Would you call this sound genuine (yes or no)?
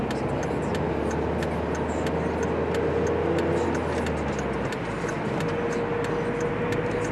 yes